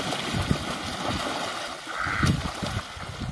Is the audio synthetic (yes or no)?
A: no